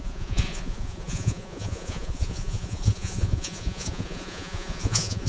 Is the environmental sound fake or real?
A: fake